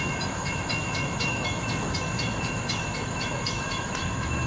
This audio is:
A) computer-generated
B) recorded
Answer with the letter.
A